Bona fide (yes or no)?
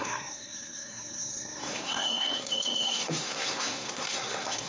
no